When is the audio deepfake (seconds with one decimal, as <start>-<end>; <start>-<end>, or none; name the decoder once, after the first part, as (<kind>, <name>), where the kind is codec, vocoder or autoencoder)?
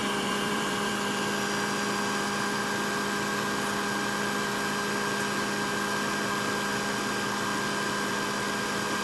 0.0-0.9 (vocoder, BigVGAN v2)